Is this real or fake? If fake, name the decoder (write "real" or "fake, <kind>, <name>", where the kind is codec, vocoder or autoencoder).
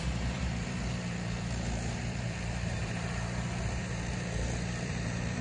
fake, vocoder, BigVGAN v2